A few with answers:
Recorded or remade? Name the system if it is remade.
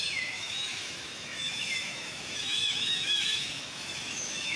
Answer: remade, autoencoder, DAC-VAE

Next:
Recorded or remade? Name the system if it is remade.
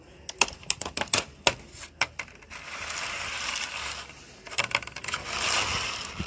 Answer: recorded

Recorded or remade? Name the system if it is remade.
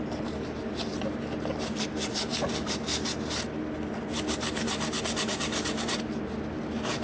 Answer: remade, vocoder, BigVGAN v2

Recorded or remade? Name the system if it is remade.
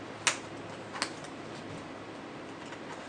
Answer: recorded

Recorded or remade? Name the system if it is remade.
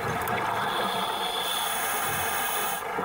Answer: recorded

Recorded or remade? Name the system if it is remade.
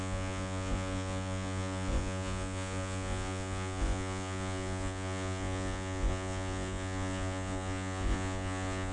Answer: remade, vocoder, Vocos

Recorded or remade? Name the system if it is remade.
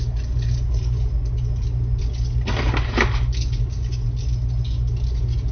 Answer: recorded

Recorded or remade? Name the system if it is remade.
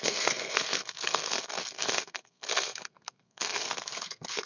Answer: remade, codec, SNAC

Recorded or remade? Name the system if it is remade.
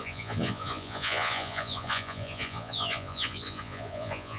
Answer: remade, vocoder, Vocos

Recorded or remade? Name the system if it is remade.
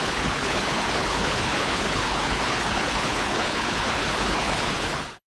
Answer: remade, codec, HILCodec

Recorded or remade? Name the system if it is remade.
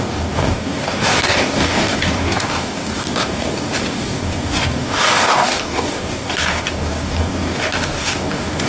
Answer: remade, codec, DAC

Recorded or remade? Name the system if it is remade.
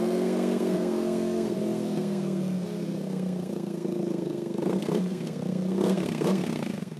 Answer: remade, codec, SNAC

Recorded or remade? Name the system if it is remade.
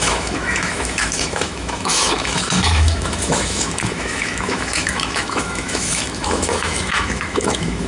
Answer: remade, autoencoder, DAC-VAE